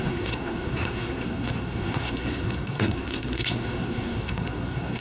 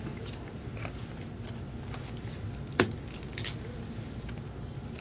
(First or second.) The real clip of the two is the second